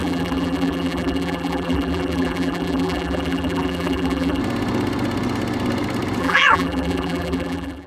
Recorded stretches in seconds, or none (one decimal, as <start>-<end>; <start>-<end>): 4.4-6.2